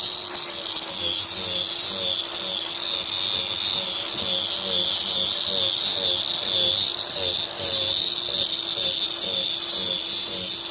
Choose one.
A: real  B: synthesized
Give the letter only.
A